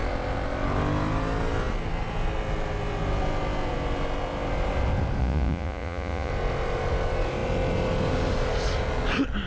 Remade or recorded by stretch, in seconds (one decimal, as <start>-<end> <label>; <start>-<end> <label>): 0.0-5.2 recorded; 5.2-6.3 remade; 6.3-9.5 recorded